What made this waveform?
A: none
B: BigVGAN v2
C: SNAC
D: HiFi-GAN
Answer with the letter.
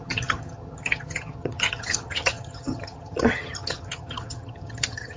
D